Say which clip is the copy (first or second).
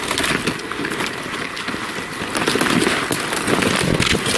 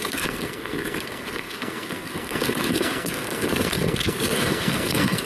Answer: second